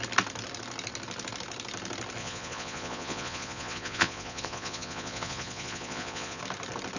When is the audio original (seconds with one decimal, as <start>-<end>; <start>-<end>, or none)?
0.0-2.2; 6.4-7.0